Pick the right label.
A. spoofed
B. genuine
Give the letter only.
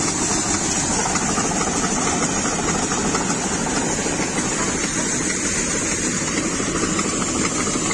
B